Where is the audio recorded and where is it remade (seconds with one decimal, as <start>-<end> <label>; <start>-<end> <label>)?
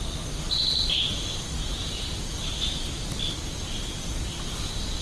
0.0-5.0 recorded